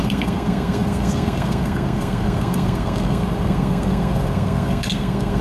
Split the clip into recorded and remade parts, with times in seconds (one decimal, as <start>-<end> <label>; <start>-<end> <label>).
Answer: 0.0-5.4 remade